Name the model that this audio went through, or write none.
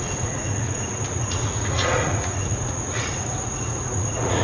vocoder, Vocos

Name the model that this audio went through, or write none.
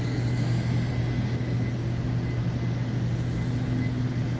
none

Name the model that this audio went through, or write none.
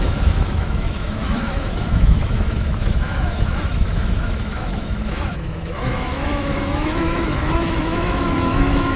autoencoder, DAC-VAE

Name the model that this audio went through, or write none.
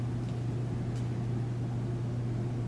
none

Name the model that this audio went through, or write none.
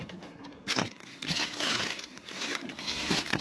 codec, SNAC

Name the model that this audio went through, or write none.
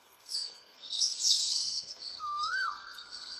codec, SNAC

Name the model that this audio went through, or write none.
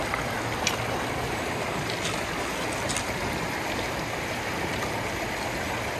none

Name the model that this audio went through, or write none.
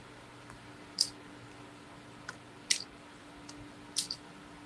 none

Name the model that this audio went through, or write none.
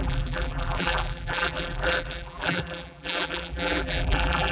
vocoder, BigVGAN v2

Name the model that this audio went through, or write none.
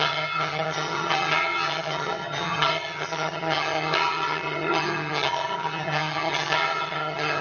vocoder, HiFi-GAN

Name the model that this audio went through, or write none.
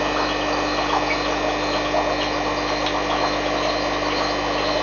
none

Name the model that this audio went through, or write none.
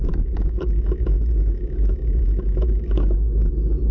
autoencoder, DAC-VAE